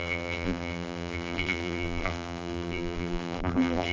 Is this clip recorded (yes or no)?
no